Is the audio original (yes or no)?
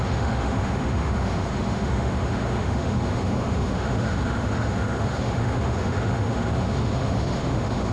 no